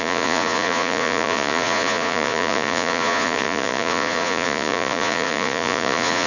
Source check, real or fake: fake